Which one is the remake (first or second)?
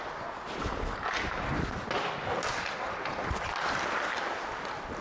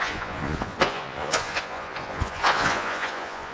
second